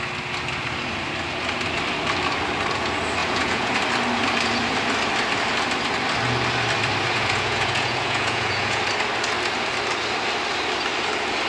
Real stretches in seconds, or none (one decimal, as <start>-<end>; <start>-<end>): 0.0-3.2; 3.8-7.1; 8.8-11.5